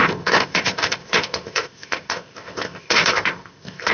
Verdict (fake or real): fake